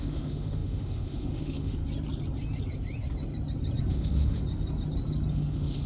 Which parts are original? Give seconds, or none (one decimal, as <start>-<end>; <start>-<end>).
1.8-3.9; 4.4-5.3